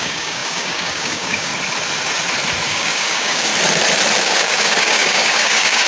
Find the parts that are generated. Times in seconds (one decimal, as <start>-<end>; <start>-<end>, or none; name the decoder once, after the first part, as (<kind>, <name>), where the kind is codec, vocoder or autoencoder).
0.0-1.5 (codec, DAC); 2.7-3.5; 4.2-5.9

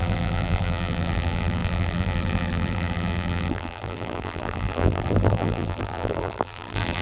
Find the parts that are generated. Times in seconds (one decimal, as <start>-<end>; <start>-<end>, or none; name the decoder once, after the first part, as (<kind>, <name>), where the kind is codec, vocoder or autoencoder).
0.0-7.0 (vocoder, BigVGAN v2)

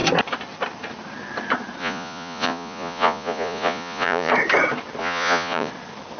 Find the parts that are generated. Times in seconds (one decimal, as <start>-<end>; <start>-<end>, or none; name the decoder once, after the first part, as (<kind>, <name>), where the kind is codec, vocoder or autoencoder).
1.8-4.3 (vocoder, Vocos); 5.0-5.7